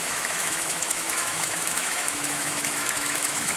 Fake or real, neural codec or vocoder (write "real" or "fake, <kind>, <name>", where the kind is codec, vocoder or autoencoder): fake, autoencoder, DAC-VAE